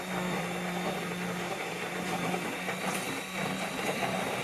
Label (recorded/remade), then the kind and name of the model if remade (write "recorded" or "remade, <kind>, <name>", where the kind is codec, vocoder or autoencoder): remade, vocoder, BigVGAN v2